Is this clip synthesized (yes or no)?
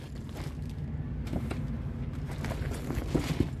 no